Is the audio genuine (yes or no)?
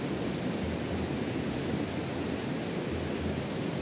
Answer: yes